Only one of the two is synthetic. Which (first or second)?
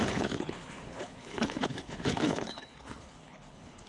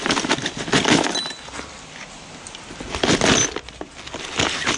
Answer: first